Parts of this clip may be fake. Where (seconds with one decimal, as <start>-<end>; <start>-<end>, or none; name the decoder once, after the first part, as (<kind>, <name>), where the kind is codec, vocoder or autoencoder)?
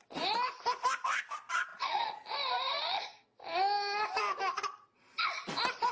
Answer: none